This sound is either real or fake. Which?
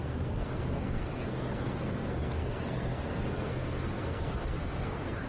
fake